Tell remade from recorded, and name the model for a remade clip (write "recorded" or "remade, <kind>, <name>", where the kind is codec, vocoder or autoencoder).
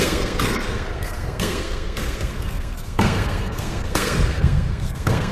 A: remade, codec, SNAC